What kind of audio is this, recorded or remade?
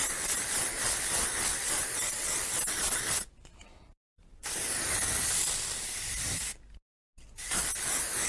recorded